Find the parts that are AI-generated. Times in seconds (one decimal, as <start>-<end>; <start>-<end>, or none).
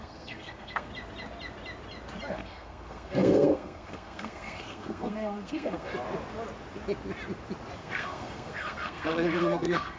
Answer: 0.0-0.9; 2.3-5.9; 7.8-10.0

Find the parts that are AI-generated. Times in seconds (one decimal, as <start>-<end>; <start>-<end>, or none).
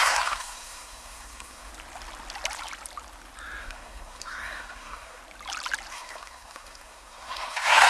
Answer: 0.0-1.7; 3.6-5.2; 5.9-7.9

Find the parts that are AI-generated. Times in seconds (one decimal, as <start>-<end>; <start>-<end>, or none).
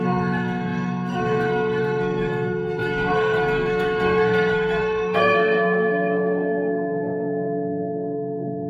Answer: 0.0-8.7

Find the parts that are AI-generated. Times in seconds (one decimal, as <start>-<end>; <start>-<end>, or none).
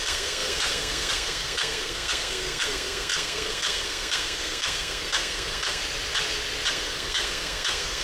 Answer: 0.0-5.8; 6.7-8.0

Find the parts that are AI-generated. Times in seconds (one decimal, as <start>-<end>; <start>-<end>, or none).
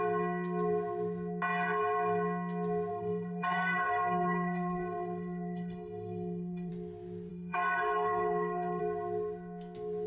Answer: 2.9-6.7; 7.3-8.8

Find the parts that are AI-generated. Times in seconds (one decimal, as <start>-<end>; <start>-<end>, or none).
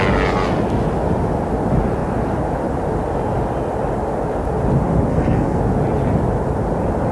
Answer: 5.1-5.6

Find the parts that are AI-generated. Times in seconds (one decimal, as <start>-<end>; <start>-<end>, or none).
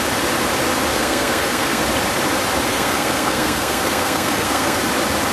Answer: 0.9-1.8; 2.7-4.8